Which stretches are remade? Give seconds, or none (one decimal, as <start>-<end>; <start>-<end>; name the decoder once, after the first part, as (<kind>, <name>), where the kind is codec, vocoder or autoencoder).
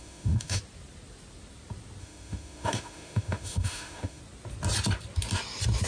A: 0.0-0.6 (autoencoder, DAC-VAE); 2.0-4.2